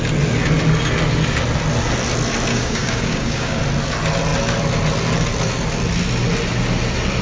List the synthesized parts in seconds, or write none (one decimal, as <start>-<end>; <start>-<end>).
2.5-3.6